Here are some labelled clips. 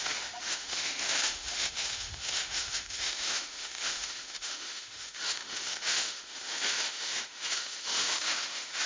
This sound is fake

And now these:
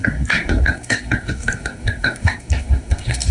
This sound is fake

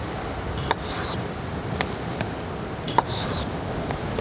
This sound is real